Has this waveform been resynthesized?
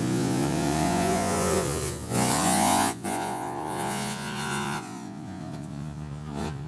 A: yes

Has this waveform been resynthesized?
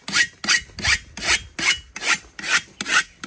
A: no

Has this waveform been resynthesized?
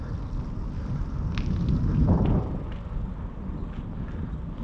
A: no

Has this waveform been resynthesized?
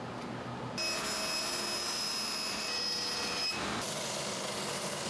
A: no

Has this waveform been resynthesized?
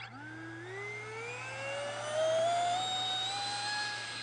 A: no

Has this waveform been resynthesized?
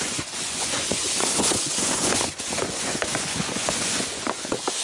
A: yes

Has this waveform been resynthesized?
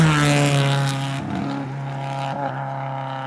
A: no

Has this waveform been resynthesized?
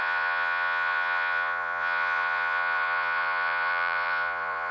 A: yes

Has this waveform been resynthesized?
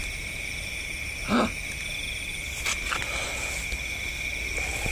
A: no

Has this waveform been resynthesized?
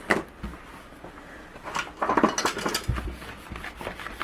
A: no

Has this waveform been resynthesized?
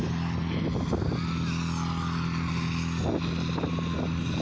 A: no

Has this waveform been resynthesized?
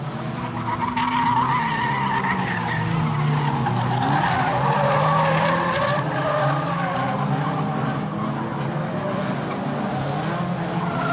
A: no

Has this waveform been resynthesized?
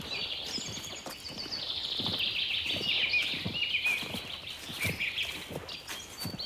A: no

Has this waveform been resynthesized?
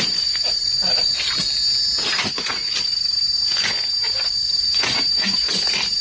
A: no